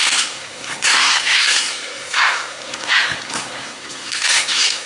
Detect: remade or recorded remade